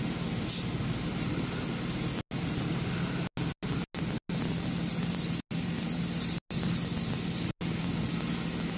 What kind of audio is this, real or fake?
real